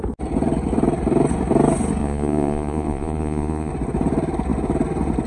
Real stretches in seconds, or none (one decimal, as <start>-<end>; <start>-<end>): 0.0-2.0; 3.7-5.3